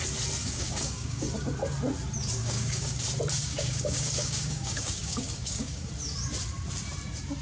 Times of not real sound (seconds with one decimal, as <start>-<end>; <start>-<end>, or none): 0.4-1.2; 2.4-3.0; 3.4-5.9